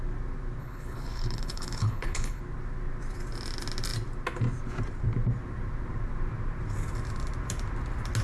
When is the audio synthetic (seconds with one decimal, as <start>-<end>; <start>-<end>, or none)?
0.6-2.4